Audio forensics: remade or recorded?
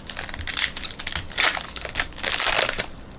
recorded